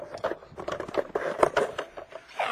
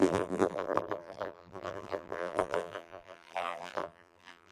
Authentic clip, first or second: first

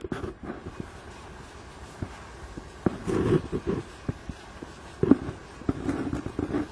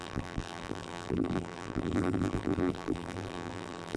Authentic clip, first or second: first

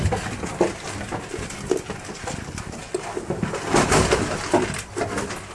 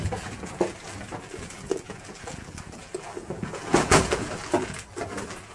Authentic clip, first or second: first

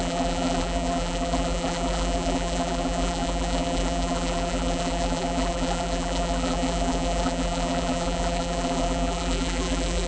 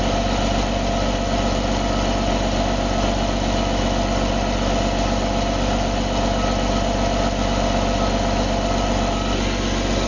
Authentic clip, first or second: second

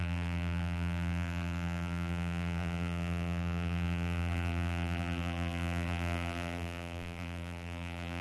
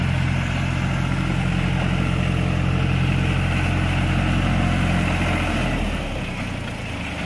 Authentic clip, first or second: second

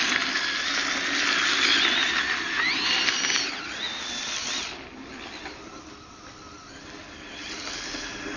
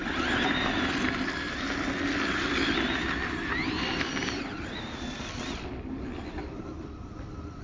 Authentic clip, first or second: first